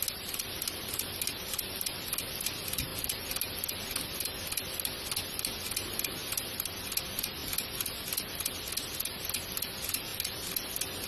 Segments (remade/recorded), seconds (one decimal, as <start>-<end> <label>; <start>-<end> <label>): 0.0-11.1 recorded